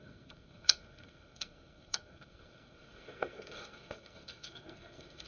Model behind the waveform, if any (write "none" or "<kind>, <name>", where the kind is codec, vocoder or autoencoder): codec, SNAC